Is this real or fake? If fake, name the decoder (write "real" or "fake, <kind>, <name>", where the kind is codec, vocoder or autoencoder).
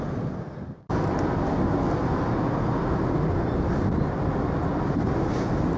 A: real